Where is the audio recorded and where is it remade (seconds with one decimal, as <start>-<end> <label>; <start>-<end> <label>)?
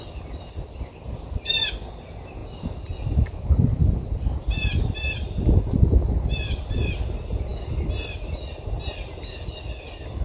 0.0-10.2 recorded